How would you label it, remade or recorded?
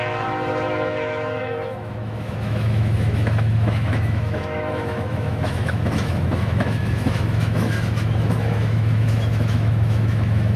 remade